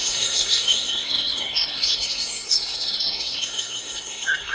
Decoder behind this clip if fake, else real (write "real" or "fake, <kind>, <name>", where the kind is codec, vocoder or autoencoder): fake, codec, SNAC